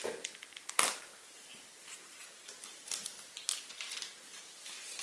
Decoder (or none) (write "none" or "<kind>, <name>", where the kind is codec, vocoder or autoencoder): none